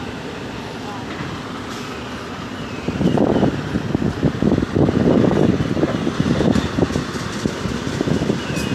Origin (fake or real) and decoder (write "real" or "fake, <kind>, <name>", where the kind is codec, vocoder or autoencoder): real